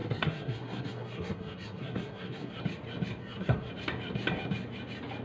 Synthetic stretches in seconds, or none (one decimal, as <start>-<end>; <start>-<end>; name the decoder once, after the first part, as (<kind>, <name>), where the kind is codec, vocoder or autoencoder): 0.0-2.6 (codec, SNAC); 3.2-3.7